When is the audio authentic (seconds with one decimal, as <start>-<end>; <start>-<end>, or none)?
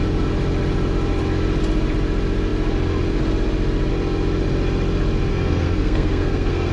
0.0-5.3